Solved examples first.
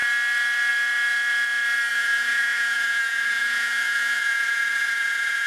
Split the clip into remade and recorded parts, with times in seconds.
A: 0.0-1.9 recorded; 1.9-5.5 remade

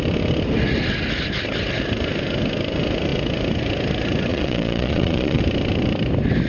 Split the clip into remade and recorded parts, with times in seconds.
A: 0.0-4.3 recorded; 4.3-5.4 remade; 5.4-6.5 recorded